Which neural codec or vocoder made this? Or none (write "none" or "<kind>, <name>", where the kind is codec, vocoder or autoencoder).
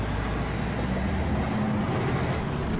none